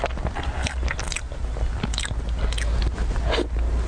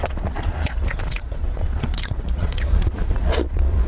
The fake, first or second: second